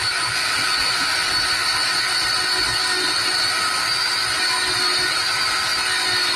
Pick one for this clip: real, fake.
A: real